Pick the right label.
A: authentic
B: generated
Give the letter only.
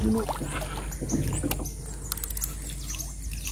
A